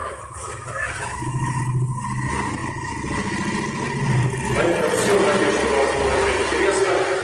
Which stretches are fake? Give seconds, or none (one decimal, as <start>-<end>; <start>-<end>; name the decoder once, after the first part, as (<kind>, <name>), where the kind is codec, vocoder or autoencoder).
0.0-1.6 (autoencoder, DAC-VAE)